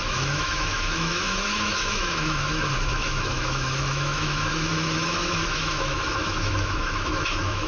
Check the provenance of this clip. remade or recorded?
remade